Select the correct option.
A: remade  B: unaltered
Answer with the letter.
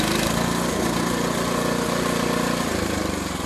B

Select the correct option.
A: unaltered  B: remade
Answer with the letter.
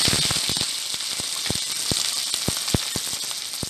A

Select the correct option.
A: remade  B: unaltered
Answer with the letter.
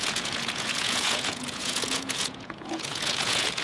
A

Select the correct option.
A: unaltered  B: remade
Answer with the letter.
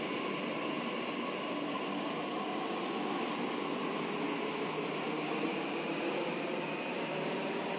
A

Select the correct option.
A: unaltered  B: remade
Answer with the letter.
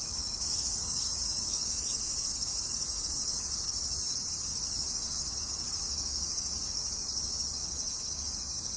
B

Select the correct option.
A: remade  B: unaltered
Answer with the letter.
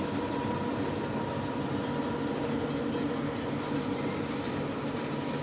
B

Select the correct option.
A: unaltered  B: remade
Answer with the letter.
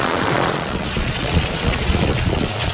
B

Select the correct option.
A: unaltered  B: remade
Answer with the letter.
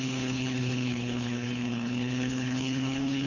B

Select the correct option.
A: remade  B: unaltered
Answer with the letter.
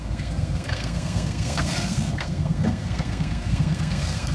A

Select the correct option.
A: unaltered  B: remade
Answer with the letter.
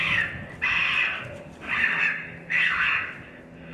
A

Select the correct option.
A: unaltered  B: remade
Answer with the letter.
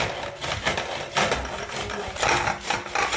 A